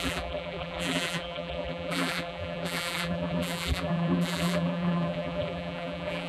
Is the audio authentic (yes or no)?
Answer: no